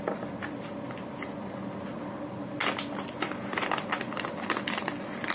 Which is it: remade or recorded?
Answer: recorded